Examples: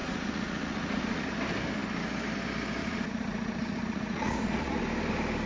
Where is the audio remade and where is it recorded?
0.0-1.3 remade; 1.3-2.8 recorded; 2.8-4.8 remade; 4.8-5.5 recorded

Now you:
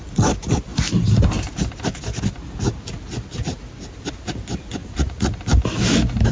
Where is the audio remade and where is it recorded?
0.0-4.8 recorded; 4.8-5.3 remade; 5.3-6.3 recorded

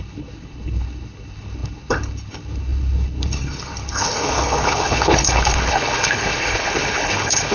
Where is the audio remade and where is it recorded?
0.0-7.5 remade

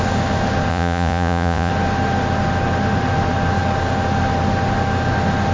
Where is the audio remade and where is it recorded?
0.0-0.7 recorded; 0.7-1.7 remade; 1.7-5.5 recorded

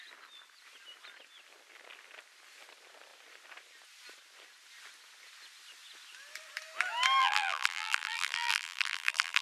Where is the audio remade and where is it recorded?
0.0-7.2 recorded; 7.2-9.4 remade

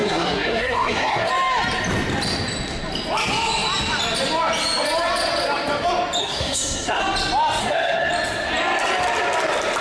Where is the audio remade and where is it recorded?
0.0-1.3 remade; 1.3-6.2 recorded; 6.2-7.0 remade; 7.0-7.6 recorded; 7.6-8.1 remade; 8.1-9.8 recorded